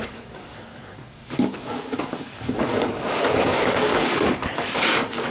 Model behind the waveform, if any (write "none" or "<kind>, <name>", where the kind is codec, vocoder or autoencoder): codec, DAC